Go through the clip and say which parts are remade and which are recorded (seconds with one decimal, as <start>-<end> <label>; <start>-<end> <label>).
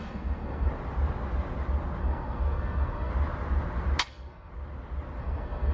0.0-0.7 remade; 0.7-2.0 recorded; 2.0-3.1 remade; 3.1-4.0 recorded; 4.0-4.5 remade; 4.5-5.2 recorded; 5.2-5.7 remade